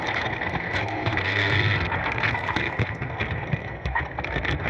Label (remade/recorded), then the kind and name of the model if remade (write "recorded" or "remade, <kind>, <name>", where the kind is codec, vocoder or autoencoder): remade, codec, SNAC